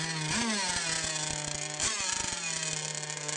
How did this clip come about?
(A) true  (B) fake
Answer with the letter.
A